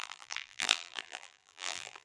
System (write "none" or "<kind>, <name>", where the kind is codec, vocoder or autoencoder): vocoder, BigVGAN v2